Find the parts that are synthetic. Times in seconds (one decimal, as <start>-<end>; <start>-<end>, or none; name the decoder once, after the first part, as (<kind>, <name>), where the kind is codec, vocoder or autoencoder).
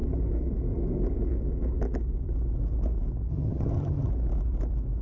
3.3-4.1 (vocoder, HiFi-GAN)